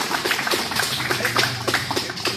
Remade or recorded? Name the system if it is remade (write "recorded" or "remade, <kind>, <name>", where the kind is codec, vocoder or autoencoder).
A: remade, vocoder, BigVGAN v2